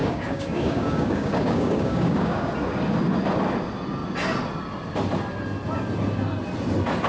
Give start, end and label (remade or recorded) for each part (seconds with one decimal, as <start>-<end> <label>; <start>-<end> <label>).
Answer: 0.0-2.5 remade; 2.5-7.1 recorded